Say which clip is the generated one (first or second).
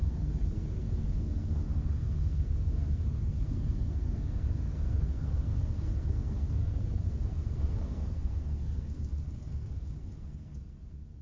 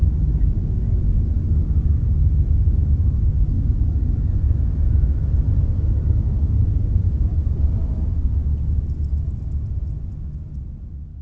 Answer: first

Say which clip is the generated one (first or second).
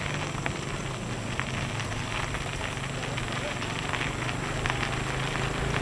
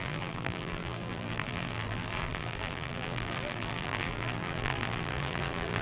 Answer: second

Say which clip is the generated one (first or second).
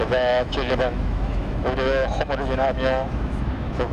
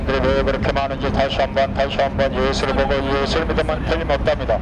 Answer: first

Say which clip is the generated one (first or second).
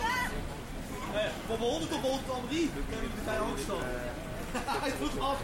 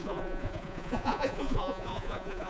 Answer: second